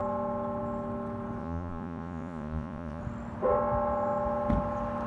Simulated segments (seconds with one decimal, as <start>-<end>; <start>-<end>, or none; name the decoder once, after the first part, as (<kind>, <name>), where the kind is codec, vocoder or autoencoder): 1.4-3.0 (vocoder, Vocos)